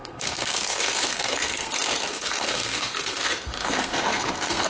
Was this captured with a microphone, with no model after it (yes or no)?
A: no